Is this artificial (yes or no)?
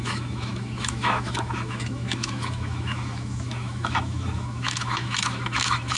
yes